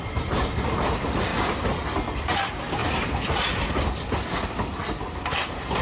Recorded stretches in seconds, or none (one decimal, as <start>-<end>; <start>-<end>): 0.0-5.8